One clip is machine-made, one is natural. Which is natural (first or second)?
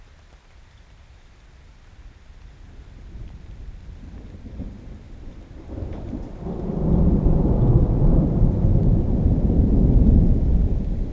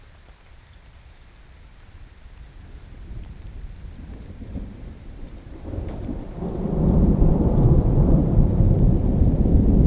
first